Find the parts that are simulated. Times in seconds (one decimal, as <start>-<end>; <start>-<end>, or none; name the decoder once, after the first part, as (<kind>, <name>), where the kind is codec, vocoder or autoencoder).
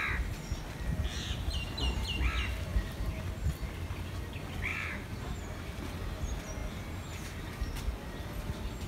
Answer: 4.7-5.8 (vocoder, BigVGAN v2); 6.6-7.4